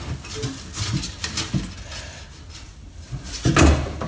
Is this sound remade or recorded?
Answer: recorded